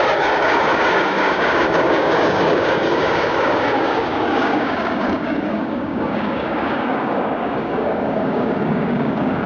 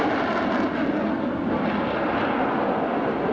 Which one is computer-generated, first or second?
first